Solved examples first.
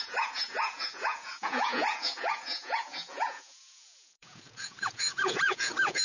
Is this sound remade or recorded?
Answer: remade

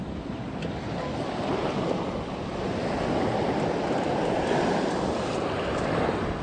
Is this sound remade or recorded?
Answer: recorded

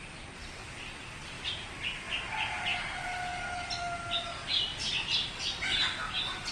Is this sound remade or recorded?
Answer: recorded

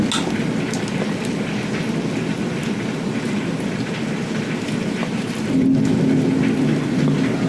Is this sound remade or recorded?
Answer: recorded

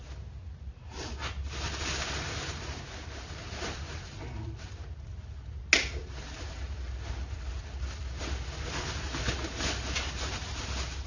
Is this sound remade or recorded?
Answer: recorded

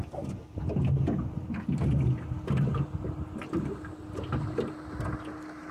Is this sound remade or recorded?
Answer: recorded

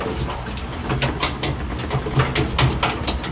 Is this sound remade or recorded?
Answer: recorded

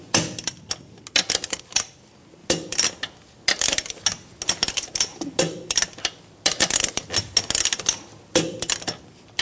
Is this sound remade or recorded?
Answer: recorded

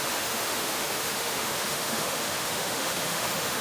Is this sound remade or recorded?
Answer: remade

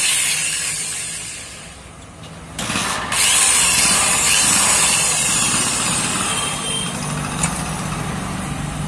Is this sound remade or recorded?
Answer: recorded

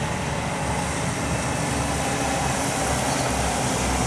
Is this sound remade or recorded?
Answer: recorded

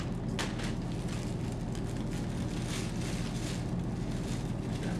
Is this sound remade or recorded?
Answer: recorded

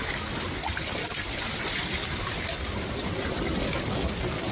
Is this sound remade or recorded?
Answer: recorded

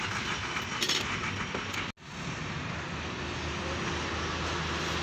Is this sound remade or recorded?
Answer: recorded